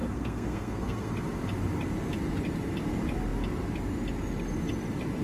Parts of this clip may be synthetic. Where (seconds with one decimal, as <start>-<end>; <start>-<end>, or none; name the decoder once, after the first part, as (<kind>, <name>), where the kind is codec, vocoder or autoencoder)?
0.0-1.1 (codec, SNAC)